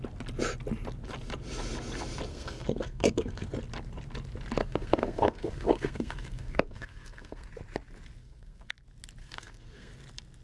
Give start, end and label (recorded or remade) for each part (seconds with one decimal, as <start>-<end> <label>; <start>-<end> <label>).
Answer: 0.0-2.3 recorded; 2.3-3.5 remade; 3.5-4.6 recorded; 4.6-7.5 remade; 7.5-8.2 recorded; 8.2-8.7 remade; 8.7-9.2 recorded; 9.2-9.9 remade; 9.9-10.4 recorded